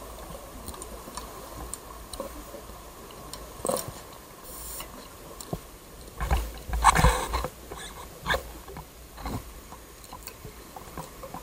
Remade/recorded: remade